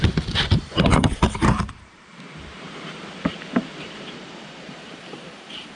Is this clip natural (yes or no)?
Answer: no